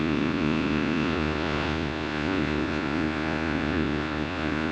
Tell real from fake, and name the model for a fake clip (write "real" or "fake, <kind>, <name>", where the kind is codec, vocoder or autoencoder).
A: fake, vocoder, Vocos